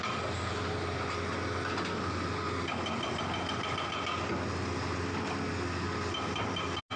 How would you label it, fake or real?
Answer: real